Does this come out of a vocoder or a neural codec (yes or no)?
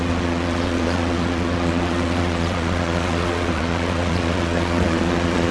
yes